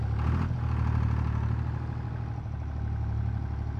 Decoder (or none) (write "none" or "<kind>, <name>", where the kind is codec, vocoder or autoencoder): none